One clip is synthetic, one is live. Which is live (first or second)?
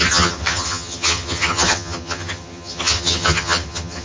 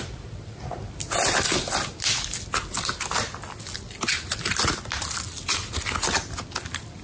second